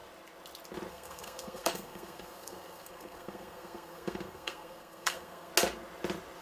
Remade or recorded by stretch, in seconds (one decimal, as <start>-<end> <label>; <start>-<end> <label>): 0.0-0.9 recorded; 0.9-5.5 remade; 5.5-6.4 recorded